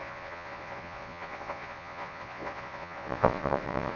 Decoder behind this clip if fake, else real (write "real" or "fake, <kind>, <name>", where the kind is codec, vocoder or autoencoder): fake, vocoder, Vocos